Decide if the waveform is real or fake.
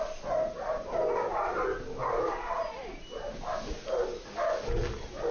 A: real